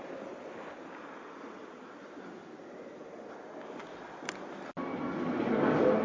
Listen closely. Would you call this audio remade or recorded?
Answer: recorded